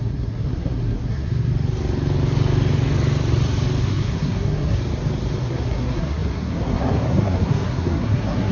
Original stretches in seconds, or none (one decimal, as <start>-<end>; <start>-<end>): 1.5-3.8; 4.8-5.4